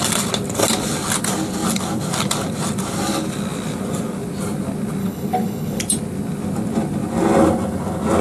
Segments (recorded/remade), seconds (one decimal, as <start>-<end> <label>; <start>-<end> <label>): 0.0-5.0 recorded; 5.0-5.8 remade; 5.8-8.2 recorded